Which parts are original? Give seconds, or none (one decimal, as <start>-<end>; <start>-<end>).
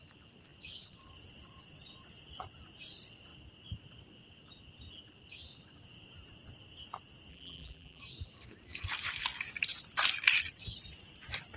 0.0-7.3; 8.0-11.6